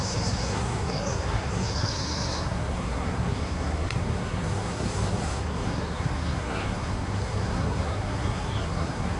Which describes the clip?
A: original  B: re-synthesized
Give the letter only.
B